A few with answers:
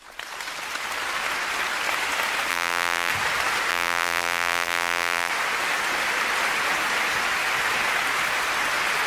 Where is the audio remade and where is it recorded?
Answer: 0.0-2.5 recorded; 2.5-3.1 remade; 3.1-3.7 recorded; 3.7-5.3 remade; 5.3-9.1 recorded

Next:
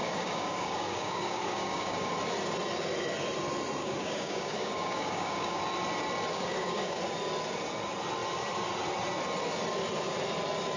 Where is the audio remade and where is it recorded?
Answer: 0.0-2.1 remade; 2.1-3.8 recorded; 3.8-5.6 remade; 5.6-6.3 recorded; 6.3-7.0 remade; 7.0-10.8 recorded

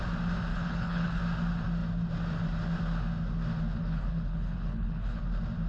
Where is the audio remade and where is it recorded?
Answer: 0.0-0.5 recorded; 0.5-1.2 remade; 1.2-3.8 recorded; 3.8-5.2 remade; 5.2-5.7 recorded

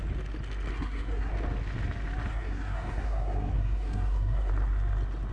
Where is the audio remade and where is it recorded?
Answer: 0.0-0.7 recorded; 0.7-1.3 remade; 1.3-2.3 recorded; 2.3-4.5 remade; 4.5-5.3 recorded

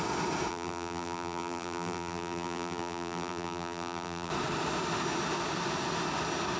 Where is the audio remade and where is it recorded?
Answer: 0.0-0.5 recorded; 0.5-4.3 remade; 4.3-6.6 recorded

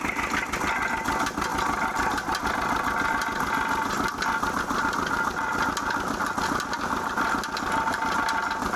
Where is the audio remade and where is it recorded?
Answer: 0.0-8.8 recorded